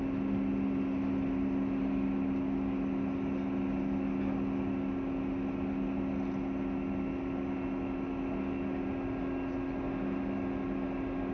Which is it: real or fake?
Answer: real